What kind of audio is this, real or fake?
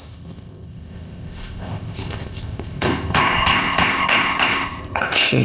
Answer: fake